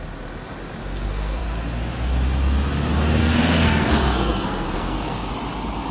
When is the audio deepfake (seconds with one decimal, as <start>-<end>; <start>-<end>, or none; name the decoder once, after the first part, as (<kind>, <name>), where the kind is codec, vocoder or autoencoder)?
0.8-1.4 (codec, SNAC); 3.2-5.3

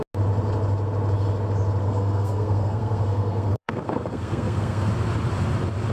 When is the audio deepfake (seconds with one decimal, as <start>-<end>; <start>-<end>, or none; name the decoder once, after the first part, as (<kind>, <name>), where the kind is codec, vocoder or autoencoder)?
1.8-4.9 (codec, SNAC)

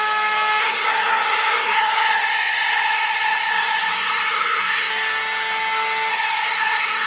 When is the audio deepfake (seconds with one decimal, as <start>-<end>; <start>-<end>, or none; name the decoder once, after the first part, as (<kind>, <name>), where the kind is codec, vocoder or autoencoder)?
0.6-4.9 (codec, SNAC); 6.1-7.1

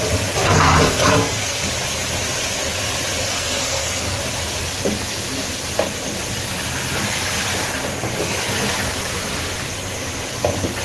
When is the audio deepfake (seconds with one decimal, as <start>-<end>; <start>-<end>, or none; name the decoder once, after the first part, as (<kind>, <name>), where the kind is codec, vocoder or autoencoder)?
0.4-1.7 (codec, SNAC); 3.3-4.2